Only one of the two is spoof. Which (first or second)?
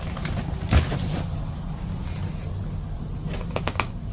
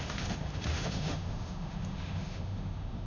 second